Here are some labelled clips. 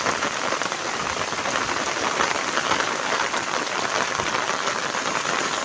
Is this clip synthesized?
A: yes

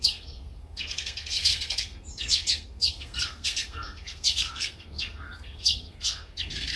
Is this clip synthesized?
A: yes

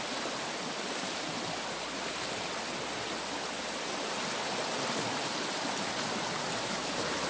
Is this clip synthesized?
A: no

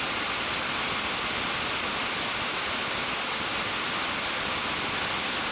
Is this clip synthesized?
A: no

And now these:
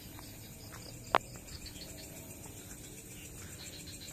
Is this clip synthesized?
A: no